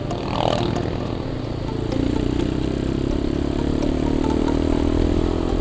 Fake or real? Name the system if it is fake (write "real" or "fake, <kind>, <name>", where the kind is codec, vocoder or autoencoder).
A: real